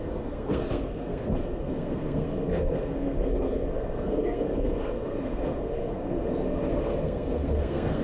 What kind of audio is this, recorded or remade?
remade